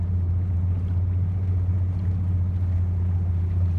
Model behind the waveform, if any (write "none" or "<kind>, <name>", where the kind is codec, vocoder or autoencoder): none